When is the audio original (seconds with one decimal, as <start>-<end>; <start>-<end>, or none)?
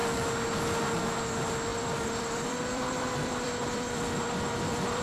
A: 0.0-1.7